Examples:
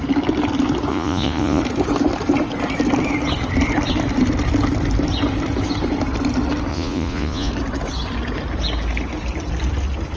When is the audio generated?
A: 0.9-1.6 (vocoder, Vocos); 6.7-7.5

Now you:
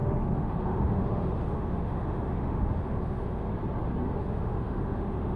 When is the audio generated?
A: 0.0-3.5 (autoencoder, DAC-VAE); 4.2-5.4

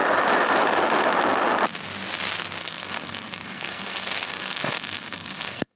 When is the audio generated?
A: 2.6-5.8 (codec, SNAC)

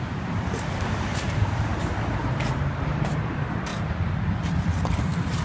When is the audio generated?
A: 0.0-3.7 (vocoder, BigVGAN v2); 5.0-5.4

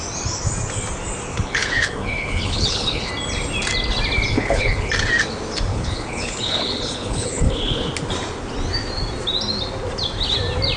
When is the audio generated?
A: 1.3-3.1 (codec, HILCodec); 4.3-4.9; 5.7-7.9